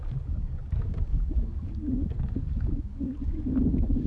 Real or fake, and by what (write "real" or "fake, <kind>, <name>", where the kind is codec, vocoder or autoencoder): fake, codec, DAC